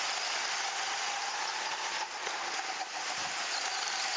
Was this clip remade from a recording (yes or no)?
no